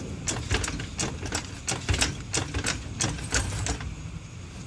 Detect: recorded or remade recorded